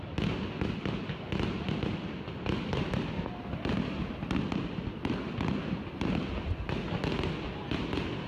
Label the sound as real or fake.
real